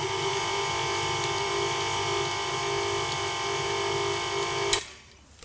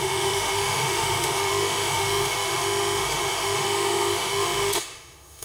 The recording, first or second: first